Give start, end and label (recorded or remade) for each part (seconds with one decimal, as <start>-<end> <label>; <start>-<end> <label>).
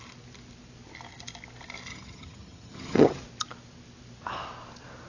0.0-1.9 recorded; 1.9-3.2 remade; 3.2-5.1 recorded